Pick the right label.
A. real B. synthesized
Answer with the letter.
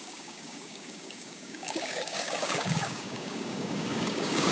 B